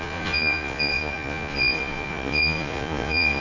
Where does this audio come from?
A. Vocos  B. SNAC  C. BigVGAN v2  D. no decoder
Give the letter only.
A